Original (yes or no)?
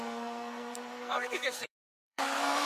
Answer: no